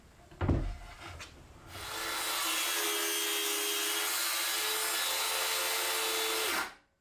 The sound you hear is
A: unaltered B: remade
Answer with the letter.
A